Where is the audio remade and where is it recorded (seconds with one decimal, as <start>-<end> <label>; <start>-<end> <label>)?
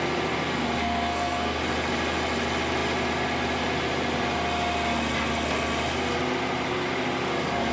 0.0-0.8 recorded; 0.8-1.6 remade; 1.6-7.7 recorded